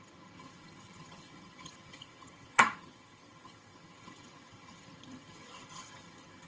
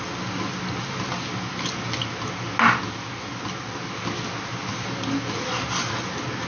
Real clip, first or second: second